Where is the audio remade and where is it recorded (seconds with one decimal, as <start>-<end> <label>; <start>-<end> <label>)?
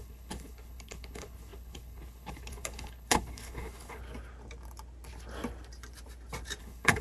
0.0-4.0 remade; 4.0-6.6 recorded; 6.6-7.0 remade